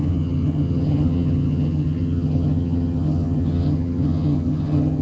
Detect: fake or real fake